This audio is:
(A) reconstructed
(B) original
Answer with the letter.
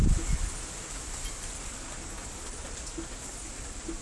B